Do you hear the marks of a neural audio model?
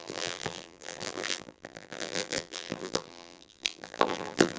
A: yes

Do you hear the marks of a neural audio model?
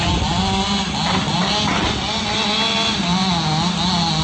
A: no